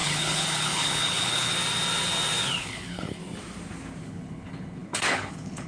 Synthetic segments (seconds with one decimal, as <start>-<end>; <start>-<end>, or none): 0.0-1.5; 2.6-3.2; 4.0-5.7